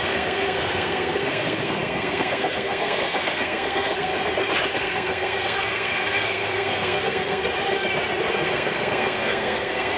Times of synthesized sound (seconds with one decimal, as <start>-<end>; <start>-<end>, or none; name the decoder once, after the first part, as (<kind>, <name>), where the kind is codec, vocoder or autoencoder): 0.0-4.1 (codec, SNAC); 4.8-7.4; 8.3-10.0

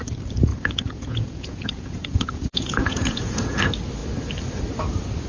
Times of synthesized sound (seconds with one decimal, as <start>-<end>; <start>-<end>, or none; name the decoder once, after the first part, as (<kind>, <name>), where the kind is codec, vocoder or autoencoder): 0.5-3.6 (vocoder, Vocos)

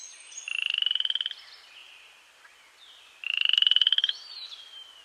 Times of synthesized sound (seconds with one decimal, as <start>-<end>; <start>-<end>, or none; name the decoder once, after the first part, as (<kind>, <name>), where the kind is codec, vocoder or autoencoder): 1.8-5.0 (vocoder, BigVGAN v2)

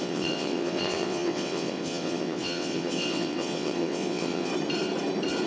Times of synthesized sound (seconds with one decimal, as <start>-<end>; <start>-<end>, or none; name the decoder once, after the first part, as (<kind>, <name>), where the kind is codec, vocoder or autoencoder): 0.0-4.5 (vocoder, WaveNeXt)

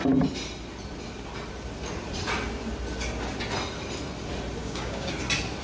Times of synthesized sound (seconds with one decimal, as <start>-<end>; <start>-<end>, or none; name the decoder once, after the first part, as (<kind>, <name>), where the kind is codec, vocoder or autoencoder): 4.6-5.1 (codec, DAC)

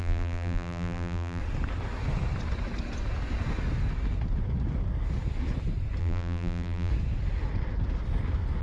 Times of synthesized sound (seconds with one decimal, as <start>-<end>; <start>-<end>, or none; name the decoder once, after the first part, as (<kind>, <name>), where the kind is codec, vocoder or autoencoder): 0.0-1.4 (vocoder, BigVGAN v2); 6.0-6.9